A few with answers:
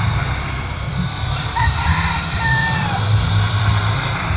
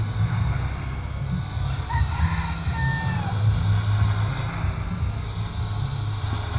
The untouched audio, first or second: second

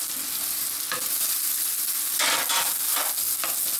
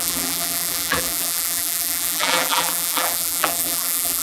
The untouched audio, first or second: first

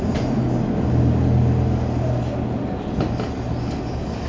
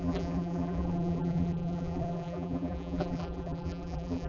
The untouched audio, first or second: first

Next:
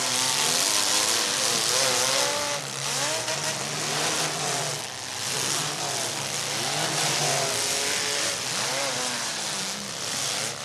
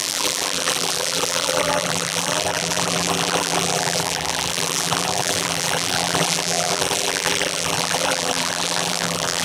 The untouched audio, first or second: first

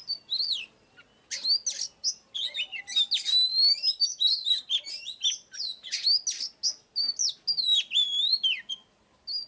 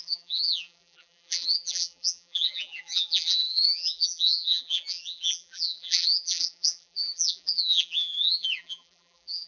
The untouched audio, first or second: first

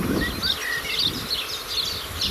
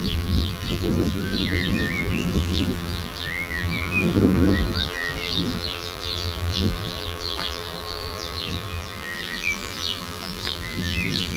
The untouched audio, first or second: first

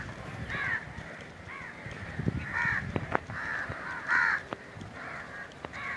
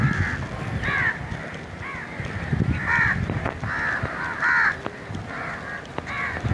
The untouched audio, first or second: second